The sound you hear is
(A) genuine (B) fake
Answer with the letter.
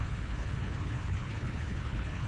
B